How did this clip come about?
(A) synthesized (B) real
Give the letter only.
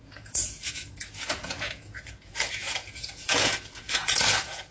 A